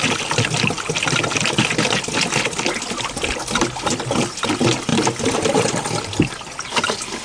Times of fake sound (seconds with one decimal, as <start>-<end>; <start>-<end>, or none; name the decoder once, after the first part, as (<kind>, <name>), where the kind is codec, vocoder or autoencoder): none